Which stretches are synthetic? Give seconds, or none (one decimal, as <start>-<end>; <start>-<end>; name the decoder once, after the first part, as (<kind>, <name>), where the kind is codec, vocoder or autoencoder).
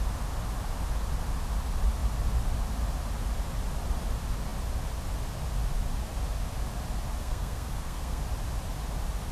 7.2-8.2 (codec, SNAC)